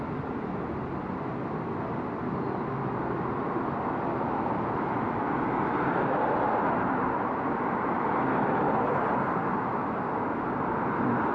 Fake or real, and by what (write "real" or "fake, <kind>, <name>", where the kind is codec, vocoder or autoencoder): real